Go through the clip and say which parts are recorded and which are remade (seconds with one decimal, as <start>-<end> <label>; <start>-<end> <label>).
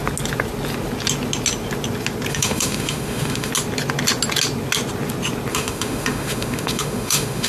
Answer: 0.0-2.3 recorded; 2.3-3.5 remade; 3.5-5.5 recorded; 5.5-7.5 remade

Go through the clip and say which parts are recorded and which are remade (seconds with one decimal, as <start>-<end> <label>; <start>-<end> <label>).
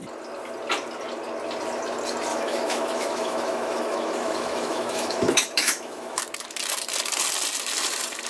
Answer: 0.0-2.3 recorded; 2.3-6.2 remade; 6.2-8.3 recorded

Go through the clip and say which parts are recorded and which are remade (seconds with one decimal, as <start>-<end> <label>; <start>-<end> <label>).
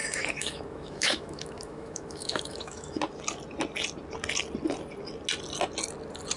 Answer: 0.0-3.0 remade; 3.0-6.4 recorded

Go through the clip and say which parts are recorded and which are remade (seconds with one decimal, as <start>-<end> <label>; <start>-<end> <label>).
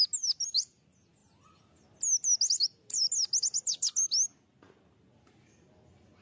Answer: 0.0-6.2 recorded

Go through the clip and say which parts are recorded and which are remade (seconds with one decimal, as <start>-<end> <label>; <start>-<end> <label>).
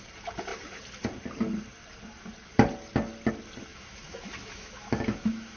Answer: 0.0-3.7 recorded; 3.7-5.6 remade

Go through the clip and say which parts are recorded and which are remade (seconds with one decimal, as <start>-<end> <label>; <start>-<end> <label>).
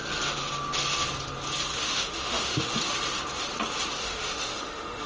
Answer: 0.0-1.7 recorded; 1.7-2.7 remade; 2.7-4.0 recorded; 4.0-5.1 remade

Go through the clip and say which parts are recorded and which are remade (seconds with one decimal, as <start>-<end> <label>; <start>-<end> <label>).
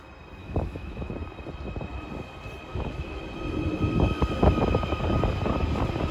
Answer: 0.0-0.4 recorded; 0.4-1.1 remade; 1.1-2.7 recorded; 2.7-3.2 remade; 3.2-6.1 recorded